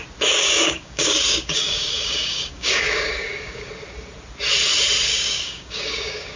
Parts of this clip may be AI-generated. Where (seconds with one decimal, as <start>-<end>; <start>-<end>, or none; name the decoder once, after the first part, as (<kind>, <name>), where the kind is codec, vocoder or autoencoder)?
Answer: 0.4-3.7 (codec, DAC); 5.1-6.4